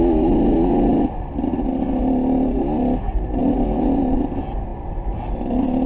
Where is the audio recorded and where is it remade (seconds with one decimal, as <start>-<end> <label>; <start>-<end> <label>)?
0.0-0.9 recorded; 0.9-2.0 remade; 2.0-5.9 recorded